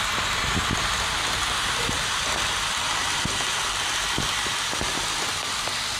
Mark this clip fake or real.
real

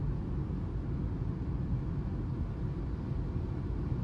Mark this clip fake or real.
real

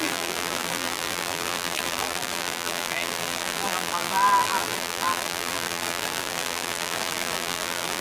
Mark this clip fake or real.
fake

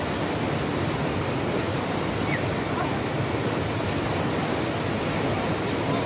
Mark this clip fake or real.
real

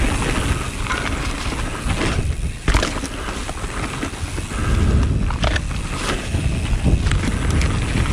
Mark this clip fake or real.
real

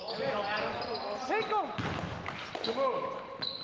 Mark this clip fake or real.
real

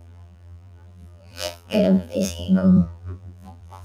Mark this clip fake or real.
fake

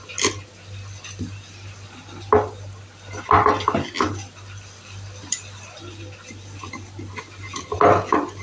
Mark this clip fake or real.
real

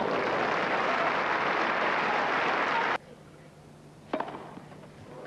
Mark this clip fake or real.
real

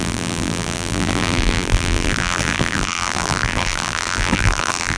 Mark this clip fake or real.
fake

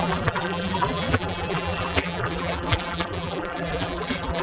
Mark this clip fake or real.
fake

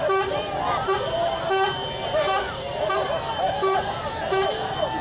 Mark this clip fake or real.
real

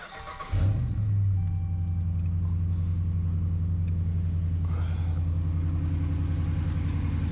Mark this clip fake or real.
real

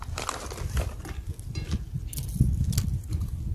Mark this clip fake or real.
real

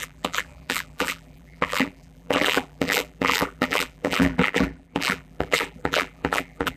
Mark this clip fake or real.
fake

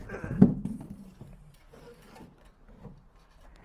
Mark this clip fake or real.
fake